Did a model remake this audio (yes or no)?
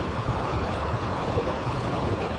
yes